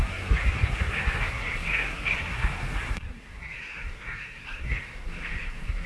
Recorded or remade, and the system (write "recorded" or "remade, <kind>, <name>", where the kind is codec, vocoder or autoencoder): remade, codec, SNAC